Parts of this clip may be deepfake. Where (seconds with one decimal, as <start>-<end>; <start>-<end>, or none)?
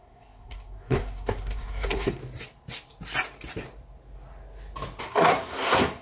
0.0-2.2; 5.0-6.0